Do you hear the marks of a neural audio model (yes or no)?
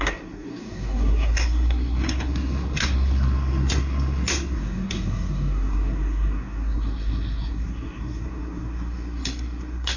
yes